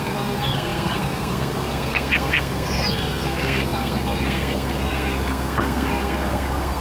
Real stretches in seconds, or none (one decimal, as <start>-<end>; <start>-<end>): none